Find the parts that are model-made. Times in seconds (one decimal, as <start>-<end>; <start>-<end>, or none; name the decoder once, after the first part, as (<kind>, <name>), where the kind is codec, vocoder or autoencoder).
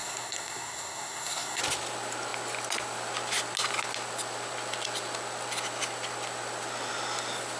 0.0-1.6 (codec, SNAC)